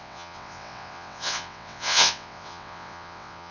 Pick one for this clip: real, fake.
fake